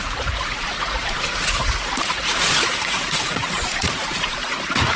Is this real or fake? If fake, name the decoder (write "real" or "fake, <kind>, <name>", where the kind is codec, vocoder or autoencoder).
fake, vocoder, Vocos